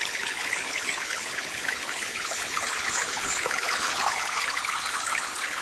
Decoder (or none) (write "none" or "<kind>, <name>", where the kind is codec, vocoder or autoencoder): codec, HILCodec